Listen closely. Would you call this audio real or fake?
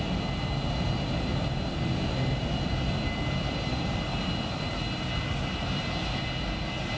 real